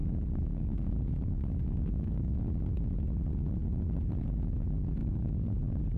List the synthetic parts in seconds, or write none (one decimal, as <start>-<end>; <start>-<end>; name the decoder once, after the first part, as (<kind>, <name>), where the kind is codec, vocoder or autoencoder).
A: 0.0-2.4 (codec, DAC); 5.0-5.6